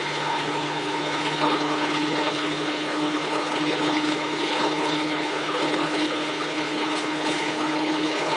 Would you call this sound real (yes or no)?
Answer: no